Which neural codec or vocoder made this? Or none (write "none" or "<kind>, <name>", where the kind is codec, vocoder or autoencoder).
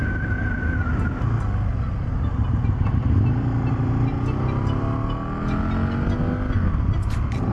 none